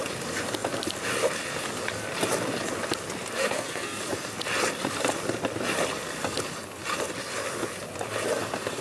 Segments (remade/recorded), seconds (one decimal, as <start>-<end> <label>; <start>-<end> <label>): 0.0-3.4 recorded; 3.4-4.0 remade; 4.0-8.8 recorded